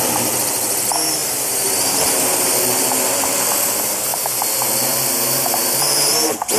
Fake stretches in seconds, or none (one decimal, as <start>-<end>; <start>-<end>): 1.2-2.5